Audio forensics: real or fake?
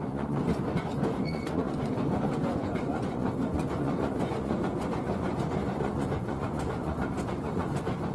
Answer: fake